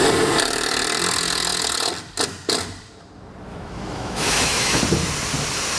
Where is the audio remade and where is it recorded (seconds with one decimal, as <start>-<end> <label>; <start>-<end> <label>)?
0.0-3.5 recorded; 3.5-4.8 remade; 4.8-5.8 recorded